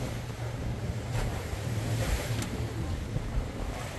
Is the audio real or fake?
fake